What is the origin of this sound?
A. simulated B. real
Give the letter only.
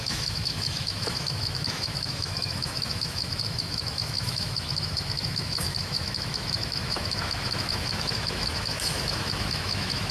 A